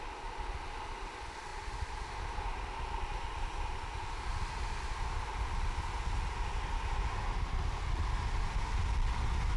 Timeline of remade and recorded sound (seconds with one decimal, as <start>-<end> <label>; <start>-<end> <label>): 0.0-1.5 recorded; 1.5-2.5 remade; 2.5-9.6 recorded